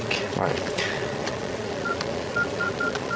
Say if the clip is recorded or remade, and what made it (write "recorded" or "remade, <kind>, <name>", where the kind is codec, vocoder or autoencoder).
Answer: remade, vocoder, Vocos